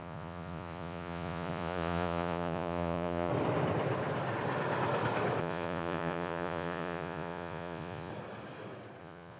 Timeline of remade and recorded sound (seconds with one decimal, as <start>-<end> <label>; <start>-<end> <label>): 0.0-3.3 remade; 3.3-5.4 recorded; 5.4-8.1 remade; 8.1-9.0 recorded; 9.0-9.4 remade